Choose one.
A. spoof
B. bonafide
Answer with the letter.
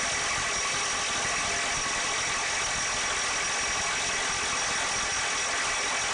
B